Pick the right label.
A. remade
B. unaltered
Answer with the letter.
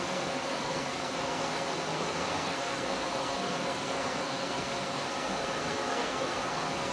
A